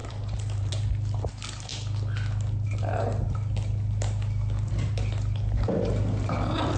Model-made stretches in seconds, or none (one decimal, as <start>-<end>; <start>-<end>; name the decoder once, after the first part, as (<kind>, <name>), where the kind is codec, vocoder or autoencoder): 0.0-0.7 (vocoder, BigVGAN v2)